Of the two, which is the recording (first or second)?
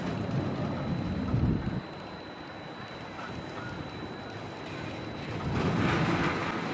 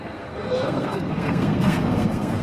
first